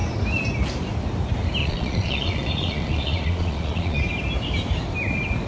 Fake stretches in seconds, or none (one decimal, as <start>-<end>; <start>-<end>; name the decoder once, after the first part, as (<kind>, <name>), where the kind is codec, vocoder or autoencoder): 1.6-4.0 (vocoder, Vocos)